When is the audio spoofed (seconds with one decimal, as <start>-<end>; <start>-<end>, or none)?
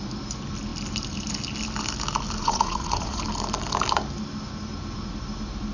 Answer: 2.4-3.2